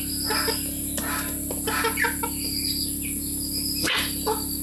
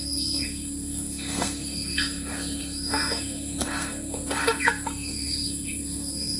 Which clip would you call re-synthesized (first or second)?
second